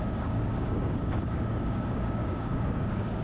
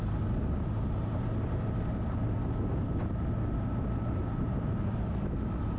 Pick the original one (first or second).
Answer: second